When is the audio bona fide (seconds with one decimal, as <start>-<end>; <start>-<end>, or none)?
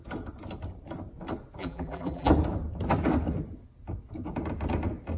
0.0-1.6; 2.3-5.2